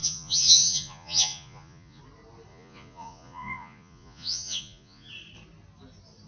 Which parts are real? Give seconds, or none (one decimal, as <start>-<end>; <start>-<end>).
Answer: 2.0-2.5; 5.1-6.3